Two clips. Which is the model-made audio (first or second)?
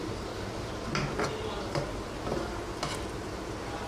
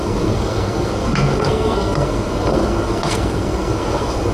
second